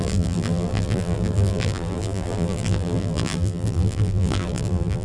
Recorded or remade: remade